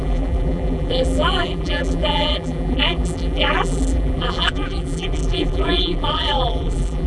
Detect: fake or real fake